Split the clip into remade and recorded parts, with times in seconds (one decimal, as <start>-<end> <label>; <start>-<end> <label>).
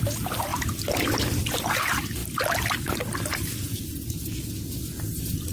0.0-5.5 recorded